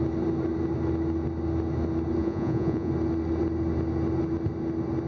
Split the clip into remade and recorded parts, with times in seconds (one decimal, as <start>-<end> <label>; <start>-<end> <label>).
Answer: 0.0-2.2 recorded; 2.2-2.9 remade; 2.9-5.1 recorded